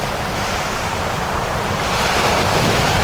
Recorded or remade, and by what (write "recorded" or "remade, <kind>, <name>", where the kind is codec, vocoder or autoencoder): remade, vocoder, BigVGAN v2